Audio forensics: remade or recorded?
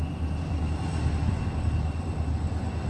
recorded